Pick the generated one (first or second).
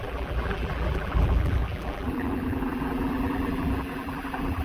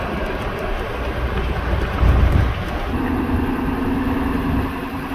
first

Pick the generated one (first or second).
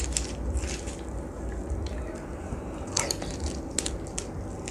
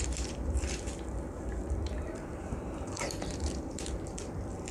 second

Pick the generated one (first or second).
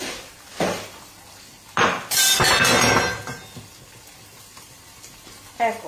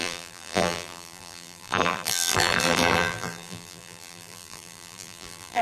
second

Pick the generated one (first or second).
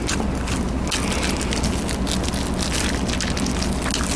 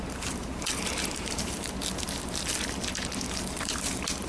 second